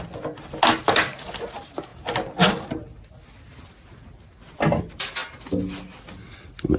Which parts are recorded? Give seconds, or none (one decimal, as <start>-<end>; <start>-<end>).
0.0-6.8